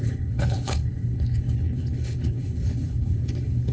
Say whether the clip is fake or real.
fake